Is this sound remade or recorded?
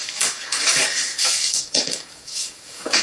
remade